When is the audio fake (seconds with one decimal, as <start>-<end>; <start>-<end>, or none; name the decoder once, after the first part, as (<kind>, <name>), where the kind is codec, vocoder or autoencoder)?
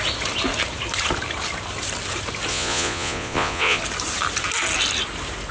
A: 2.5-3.8 (vocoder, Vocos)